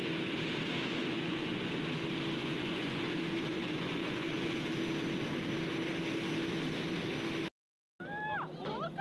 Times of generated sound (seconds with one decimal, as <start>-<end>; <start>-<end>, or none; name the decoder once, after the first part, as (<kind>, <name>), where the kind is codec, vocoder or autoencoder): 1.0-1.7 (vocoder, Vocos); 2.4-4.7